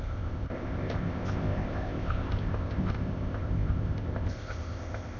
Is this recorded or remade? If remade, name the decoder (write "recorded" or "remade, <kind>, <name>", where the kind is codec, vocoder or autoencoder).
remade, codec, ZipCodec